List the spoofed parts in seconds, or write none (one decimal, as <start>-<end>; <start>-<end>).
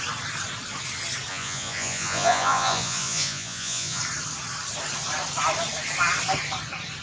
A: 1.3-4.0